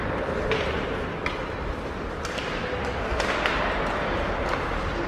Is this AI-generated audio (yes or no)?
yes